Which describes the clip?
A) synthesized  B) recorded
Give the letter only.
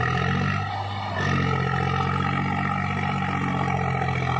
B